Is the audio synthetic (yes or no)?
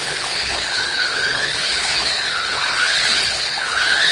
yes